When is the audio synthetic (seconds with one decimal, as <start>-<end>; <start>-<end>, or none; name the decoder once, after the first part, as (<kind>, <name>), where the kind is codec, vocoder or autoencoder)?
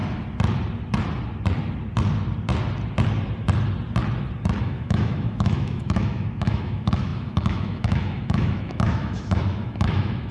4.6-10.3 (autoencoder, DAC-VAE)